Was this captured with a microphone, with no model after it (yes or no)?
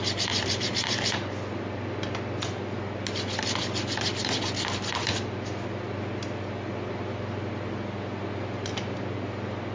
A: yes